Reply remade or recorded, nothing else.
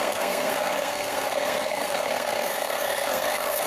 remade